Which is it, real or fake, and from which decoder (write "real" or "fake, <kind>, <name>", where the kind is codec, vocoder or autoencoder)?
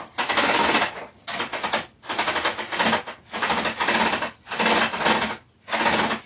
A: real